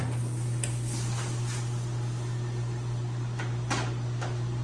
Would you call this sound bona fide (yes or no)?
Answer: yes